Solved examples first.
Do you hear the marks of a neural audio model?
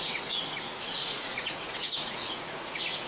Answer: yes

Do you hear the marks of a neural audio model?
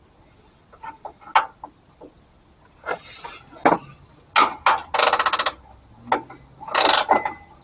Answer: no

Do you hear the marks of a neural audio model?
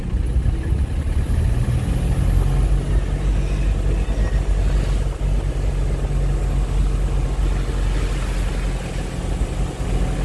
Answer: no